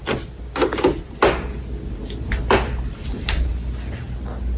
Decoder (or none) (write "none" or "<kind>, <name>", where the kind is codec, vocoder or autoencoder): none